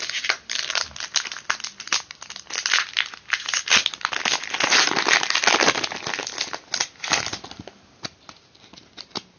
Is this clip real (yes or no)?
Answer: yes